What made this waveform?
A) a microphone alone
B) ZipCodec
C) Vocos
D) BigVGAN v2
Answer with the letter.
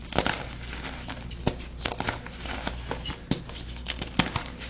A